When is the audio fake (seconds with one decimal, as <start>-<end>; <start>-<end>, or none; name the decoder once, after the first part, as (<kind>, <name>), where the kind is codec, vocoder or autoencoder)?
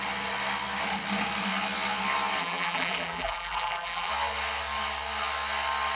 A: 2.4-4.1 (vocoder, BigVGAN v2)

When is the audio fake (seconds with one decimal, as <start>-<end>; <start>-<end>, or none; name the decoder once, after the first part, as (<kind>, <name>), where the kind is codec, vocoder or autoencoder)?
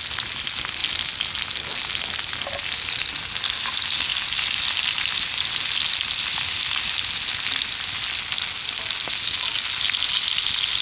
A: none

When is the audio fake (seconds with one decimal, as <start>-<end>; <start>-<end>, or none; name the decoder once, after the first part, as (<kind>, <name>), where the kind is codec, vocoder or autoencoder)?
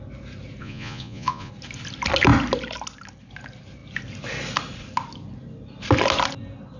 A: 0.6-1.5 (vocoder, Vocos)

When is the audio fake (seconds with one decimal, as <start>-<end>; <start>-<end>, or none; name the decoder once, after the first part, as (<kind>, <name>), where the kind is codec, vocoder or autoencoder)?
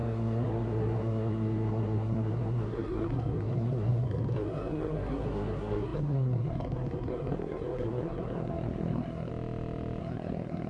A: 0.0-9.3 (codec, SNAC); 10.0-10.7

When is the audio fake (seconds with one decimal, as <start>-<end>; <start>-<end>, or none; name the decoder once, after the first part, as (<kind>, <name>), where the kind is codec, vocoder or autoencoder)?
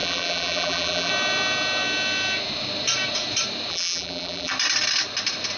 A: 0.0-1.1 (vocoder, BigVGAN v2); 3.7-4.5